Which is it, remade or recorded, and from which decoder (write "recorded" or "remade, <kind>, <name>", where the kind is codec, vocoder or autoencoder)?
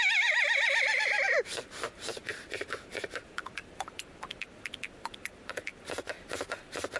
remade, vocoder, BigVGAN v2